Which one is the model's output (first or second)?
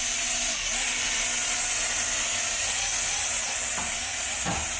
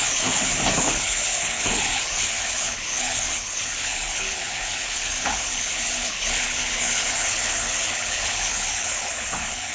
second